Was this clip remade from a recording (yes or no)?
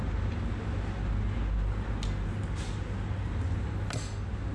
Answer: no